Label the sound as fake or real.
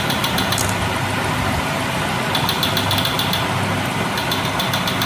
real